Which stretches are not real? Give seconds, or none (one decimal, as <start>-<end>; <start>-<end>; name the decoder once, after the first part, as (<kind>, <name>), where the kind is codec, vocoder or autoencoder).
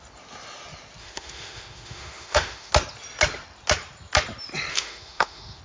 1.0-2.7 (autoencoder, DAC-VAE); 4.7-5.6